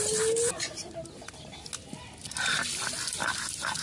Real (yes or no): yes